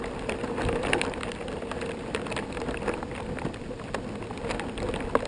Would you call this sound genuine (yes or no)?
yes